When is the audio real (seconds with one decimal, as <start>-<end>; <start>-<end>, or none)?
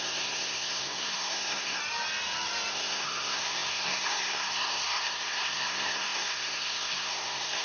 1.8-2.7